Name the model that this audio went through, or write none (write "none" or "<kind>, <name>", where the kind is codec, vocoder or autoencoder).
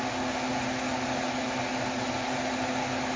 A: none